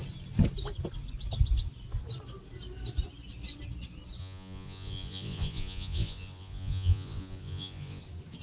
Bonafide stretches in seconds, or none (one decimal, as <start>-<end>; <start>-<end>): 0.0-4.2; 8.0-8.4